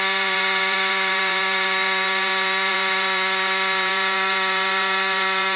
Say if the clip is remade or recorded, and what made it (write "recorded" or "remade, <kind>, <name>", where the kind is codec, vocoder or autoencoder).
remade, vocoder, BigVGAN v2